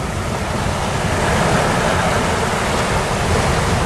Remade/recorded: recorded